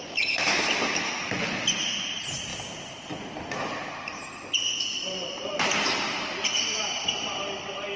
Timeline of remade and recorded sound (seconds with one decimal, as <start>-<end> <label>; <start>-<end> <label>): 0.0-4.9 recorded; 4.9-5.7 remade; 5.7-8.0 recorded